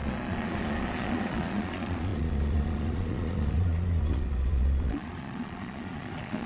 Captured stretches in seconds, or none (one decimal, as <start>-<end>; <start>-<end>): none